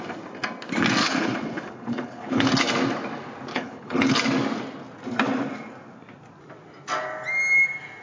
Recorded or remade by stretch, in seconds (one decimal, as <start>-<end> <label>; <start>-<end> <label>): 0.0-1.0 recorded; 1.0-2.5 remade; 2.5-3.5 recorded; 3.5-4.1 remade; 4.1-8.0 recorded